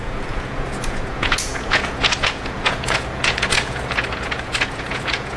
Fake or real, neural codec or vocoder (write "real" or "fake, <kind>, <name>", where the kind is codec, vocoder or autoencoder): fake, vocoder, Vocos